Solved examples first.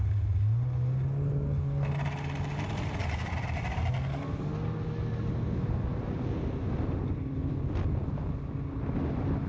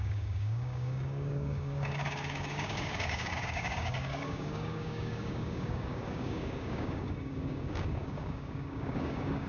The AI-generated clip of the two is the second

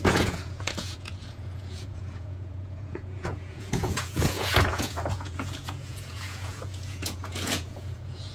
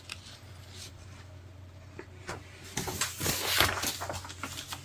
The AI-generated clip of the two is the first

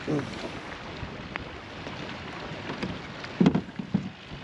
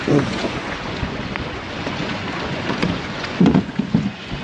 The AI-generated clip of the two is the second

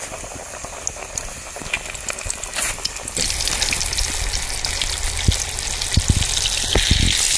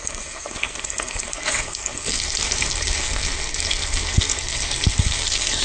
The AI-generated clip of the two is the second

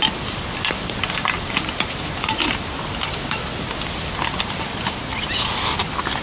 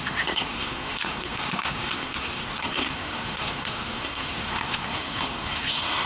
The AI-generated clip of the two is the second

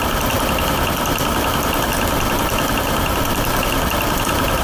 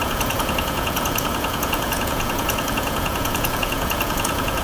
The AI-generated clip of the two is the second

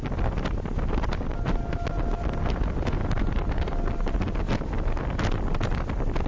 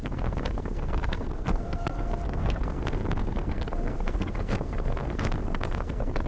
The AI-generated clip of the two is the second